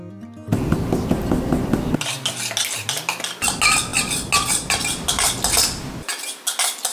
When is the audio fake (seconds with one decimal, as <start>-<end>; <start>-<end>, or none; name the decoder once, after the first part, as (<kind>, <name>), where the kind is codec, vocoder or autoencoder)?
none